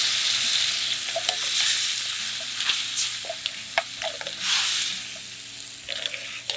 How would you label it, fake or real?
real